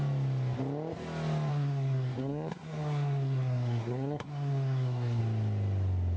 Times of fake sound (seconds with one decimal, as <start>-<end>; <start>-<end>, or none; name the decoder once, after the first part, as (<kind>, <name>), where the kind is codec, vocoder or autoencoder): 1.5-5.2 (codec, SNAC)